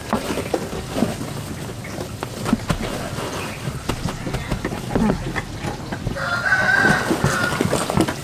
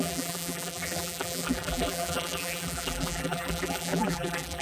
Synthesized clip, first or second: second